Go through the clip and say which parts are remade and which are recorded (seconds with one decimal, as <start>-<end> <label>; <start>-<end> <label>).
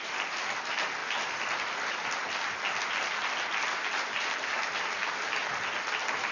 0.0-6.3 recorded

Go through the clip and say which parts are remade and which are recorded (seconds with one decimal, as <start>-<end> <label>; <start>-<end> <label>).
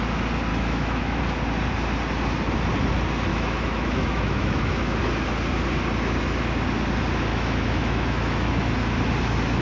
0.0-0.5 recorded; 0.5-1.2 remade; 1.2-3.3 recorded; 3.3-5.0 remade; 5.0-7.3 recorded; 7.3-8.5 remade; 8.5-9.6 recorded